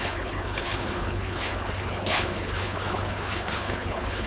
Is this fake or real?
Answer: fake